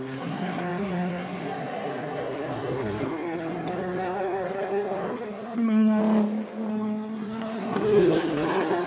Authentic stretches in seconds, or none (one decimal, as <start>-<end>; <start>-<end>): 6.0-6.7